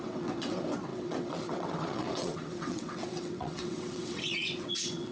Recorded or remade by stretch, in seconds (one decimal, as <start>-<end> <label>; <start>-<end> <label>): 0.0-5.1 remade